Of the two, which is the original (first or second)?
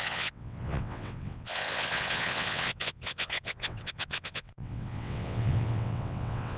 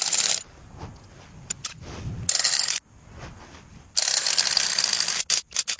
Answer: second